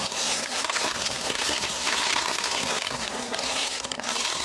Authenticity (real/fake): fake